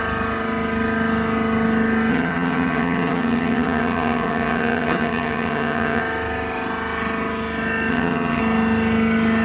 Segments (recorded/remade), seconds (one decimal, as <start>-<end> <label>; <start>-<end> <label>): 0.0-2.1 recorded; 2.1-6.0 remade; 6.0-7.9 recorded; 7.9-8.4 remade; 8.4-9.4 recorded